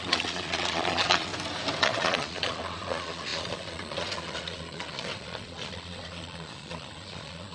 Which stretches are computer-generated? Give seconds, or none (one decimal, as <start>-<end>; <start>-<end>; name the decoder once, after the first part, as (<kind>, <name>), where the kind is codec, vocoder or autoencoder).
0.0-1.3 (vocoder, Vocos); 1.8-7.5